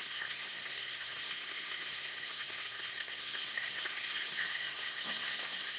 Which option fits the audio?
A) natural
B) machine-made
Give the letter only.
B